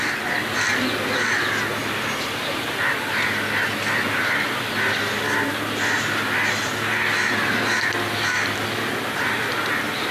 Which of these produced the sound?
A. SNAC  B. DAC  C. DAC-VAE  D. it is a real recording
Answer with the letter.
D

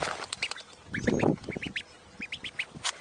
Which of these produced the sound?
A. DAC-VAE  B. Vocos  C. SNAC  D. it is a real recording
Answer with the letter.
D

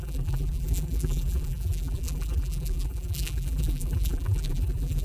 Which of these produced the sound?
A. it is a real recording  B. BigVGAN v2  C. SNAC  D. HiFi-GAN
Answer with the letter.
B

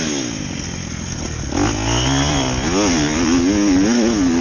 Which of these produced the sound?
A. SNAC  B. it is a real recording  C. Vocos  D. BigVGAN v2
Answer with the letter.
B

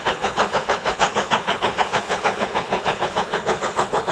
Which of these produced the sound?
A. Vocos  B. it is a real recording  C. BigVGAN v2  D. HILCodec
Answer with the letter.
D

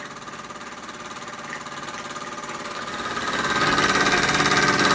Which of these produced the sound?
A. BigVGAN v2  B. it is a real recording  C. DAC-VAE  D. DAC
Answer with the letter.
B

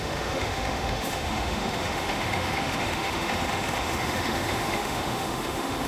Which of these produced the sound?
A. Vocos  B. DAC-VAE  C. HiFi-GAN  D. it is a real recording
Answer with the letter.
B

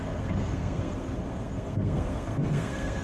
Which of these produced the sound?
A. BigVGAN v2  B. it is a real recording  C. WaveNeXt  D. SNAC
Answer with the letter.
D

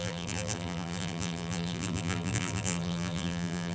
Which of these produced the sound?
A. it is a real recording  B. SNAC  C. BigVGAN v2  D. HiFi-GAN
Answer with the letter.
C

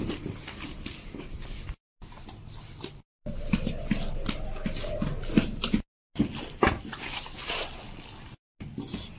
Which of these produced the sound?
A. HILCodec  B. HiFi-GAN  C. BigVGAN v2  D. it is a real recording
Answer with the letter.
D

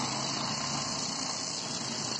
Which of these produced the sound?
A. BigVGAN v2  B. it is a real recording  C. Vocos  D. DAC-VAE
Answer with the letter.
B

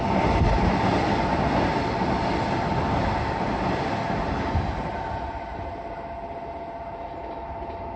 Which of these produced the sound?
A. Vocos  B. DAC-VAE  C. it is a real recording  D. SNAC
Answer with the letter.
C